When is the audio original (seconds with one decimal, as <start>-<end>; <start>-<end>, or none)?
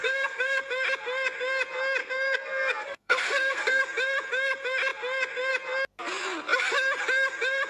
0.6-2.0; 3.8-7.7